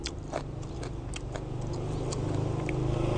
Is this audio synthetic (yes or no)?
no